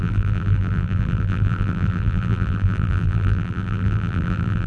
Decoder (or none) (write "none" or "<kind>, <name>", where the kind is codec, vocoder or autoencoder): vocoder, BigVGAN v2